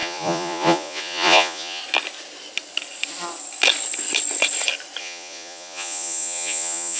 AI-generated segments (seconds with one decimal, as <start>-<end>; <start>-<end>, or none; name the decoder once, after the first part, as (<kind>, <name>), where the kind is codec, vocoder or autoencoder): 0.0-1.8 (vocoder, Vocos); 5.0-7.0